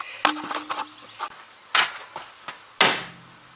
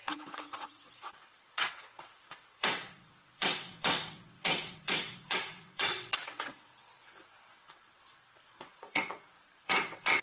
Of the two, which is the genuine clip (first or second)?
first